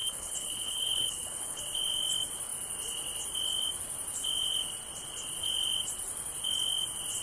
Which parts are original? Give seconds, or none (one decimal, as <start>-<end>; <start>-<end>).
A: 1.6-7.2